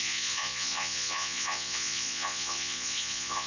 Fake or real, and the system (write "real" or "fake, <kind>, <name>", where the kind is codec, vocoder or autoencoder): fake, vocoder, Vocos